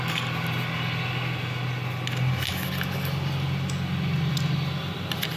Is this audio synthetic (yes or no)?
no